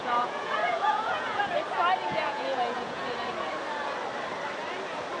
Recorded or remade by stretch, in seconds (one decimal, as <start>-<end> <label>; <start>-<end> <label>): 0.0-1.4 remade; 1.4-2.0 recorded; 2.0-3.0 remade; 3.0-5.2 recorded